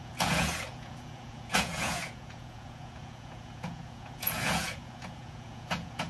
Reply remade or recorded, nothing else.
remade